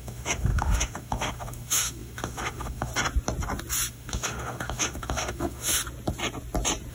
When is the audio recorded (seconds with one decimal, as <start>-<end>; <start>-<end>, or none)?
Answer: 2.9-3.9; 5.8-6.9